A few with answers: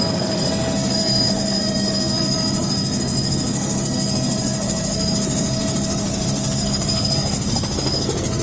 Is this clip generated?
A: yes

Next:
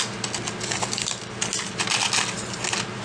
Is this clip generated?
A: no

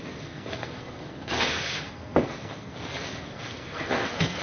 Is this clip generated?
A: yes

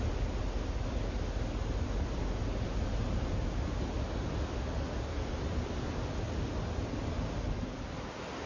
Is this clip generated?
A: no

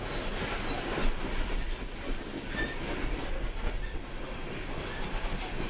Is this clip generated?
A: no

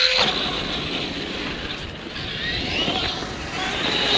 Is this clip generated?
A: no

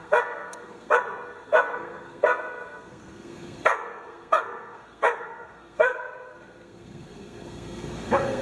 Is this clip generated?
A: yes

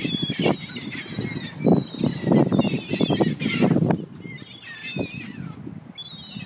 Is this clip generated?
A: no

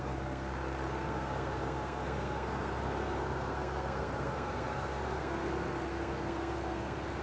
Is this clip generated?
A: yes